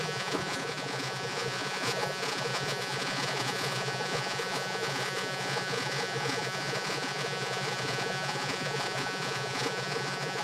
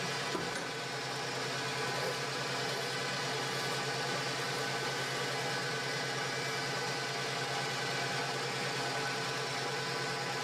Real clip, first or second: second